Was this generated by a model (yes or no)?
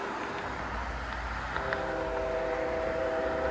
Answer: no